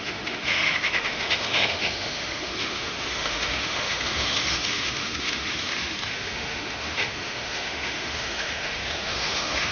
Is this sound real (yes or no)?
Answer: no